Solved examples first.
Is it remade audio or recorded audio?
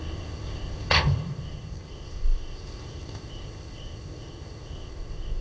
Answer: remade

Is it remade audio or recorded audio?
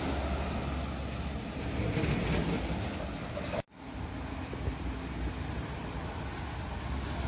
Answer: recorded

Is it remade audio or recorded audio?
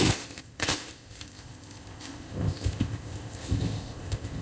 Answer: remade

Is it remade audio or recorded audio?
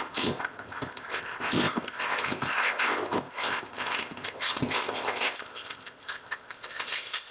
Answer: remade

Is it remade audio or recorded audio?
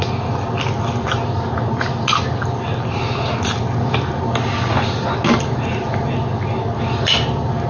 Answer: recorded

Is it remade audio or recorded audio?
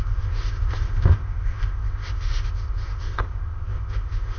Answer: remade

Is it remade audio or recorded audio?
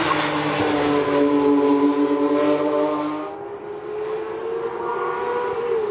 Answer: recorded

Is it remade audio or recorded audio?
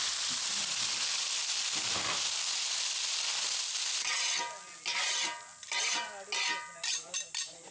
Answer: recorded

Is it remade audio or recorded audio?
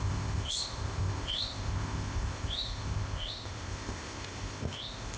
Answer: remade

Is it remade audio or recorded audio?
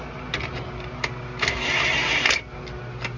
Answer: recorded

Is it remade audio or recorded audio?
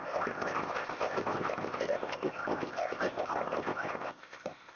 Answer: remade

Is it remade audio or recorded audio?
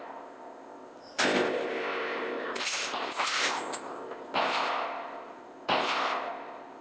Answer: remade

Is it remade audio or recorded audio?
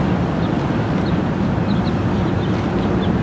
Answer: recorded